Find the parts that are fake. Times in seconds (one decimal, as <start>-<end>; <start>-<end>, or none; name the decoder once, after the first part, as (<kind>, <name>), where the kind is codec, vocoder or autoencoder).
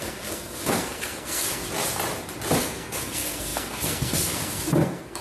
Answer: 0.0-1.6 (codec, SNAC); 2.6-5.2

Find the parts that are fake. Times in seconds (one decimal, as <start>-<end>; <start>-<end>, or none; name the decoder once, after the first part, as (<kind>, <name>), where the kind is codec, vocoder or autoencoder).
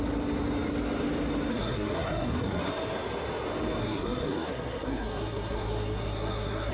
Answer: 1.5-2.7 (codec, SNAC); 3.8-6.7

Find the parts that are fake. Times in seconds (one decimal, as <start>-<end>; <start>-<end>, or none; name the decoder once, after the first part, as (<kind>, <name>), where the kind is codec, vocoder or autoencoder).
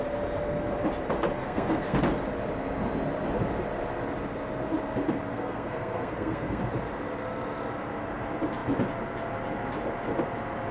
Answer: 1.4-2.0 (codec, SNAC); 5.3-6.6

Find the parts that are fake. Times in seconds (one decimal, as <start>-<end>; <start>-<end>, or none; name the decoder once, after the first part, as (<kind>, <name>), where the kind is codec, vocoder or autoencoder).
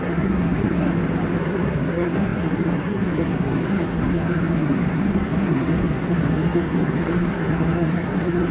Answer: 0.0-0.9 (codec, SNAC); 1.4-8.5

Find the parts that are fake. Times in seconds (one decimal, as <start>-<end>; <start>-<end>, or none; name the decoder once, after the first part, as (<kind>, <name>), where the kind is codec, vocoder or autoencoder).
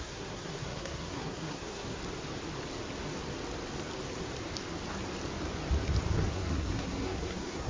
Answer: 0.0-2.0 (codec, SNAC); 6.3-7.7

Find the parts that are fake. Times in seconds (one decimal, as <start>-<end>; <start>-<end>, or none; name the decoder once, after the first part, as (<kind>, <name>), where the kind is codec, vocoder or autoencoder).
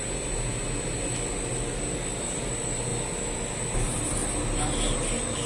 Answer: none